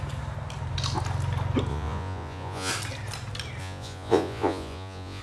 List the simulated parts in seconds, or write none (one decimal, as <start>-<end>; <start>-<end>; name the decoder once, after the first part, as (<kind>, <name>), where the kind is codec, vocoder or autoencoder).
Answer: 1.7-2.7 (vocoder, Vocos); 3.6-5.2